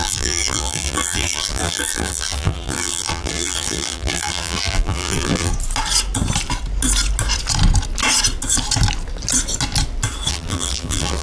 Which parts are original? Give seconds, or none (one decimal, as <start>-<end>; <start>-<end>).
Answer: 5.5-10.3

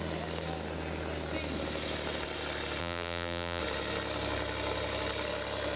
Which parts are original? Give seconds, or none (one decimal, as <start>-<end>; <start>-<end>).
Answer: 0.0-2.8; 3.6-5.8

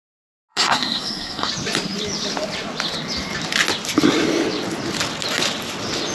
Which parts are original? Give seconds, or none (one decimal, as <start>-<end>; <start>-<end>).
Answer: 0.0-0.5; 1.5-6.1